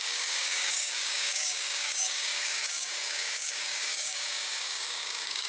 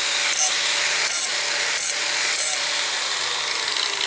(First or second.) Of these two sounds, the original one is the second